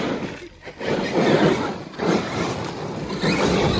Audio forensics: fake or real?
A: fake